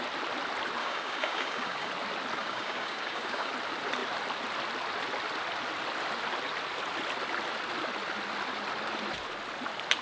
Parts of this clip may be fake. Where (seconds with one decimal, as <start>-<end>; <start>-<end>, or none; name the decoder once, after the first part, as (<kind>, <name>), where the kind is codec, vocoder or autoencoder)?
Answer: 0.8-1.9 (codec, DAC); 2.4-3.5